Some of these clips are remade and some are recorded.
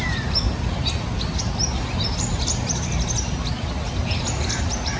recorded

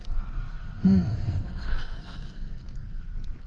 remade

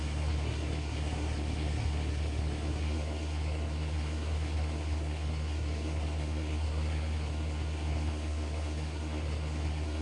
remade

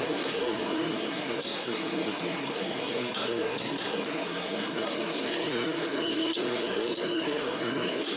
remade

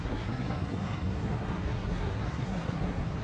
remade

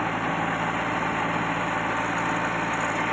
recorded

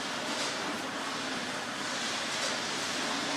recorded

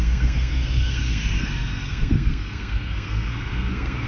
remade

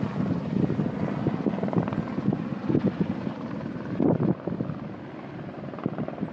recorded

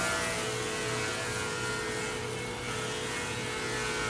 recorded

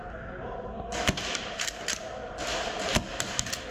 recorded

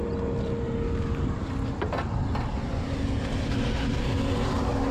recorded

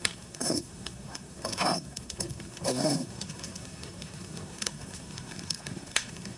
remade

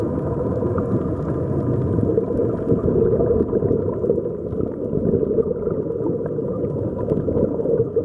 recorded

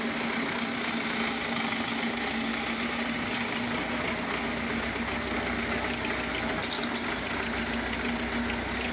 recorded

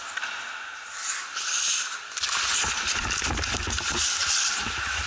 recorded